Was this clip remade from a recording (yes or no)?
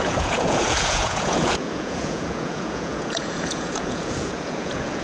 yes